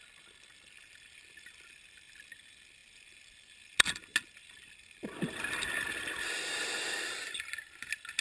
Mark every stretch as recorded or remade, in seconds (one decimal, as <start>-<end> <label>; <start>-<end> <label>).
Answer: 0.0-8.2 recorded